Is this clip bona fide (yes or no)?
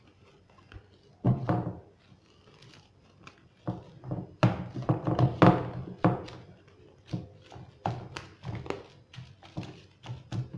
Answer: yes